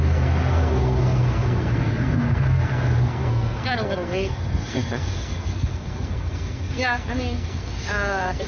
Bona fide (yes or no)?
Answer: no